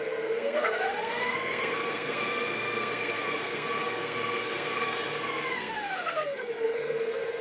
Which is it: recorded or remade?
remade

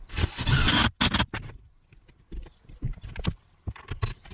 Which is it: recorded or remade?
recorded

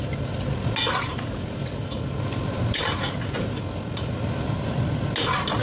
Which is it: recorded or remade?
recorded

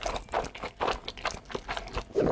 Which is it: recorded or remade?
recorded